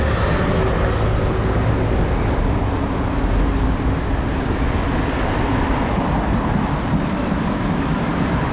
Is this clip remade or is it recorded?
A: recorded